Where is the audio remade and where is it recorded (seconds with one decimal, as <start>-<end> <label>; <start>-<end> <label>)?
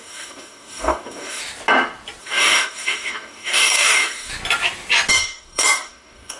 0.0-1.4 remade; 1.4-2.2 recorded; 2.2-4.3 remade; 4.3-5.1 recorded; 5.1-6.4 remade